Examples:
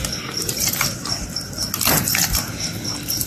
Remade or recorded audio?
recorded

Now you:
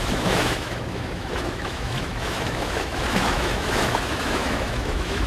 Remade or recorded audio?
remade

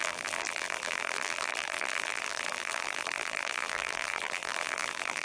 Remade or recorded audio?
remade